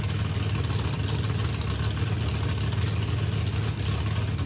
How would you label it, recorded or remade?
recorded